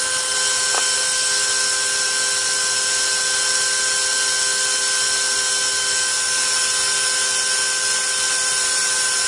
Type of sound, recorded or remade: recorded